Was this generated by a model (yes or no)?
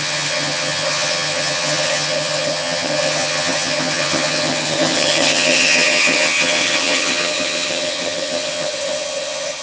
yes